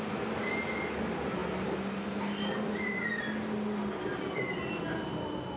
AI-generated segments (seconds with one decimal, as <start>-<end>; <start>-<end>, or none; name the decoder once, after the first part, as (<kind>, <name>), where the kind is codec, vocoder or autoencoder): none